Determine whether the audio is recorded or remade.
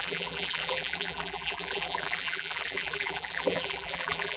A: remade